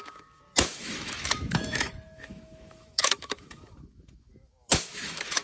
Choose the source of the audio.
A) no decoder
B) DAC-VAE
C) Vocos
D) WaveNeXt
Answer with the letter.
B